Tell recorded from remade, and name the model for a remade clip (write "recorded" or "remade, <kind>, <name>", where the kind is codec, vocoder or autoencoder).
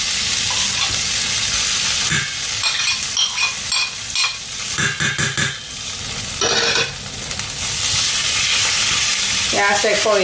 recorded